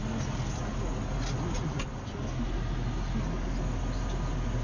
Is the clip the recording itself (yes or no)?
yes